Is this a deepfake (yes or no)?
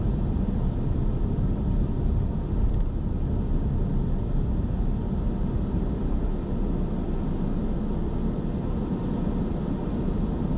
no